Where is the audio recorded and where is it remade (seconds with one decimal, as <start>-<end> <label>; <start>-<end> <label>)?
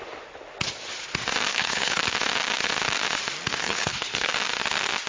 0.0-1.5 recorded; 1.5-2.0 remade; 2.0-3.6 recorded; 3.6-4.3 remade; 4.3-5.1 recorded